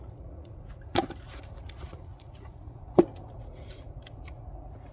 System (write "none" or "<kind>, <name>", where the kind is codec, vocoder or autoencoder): vocoder, Vocos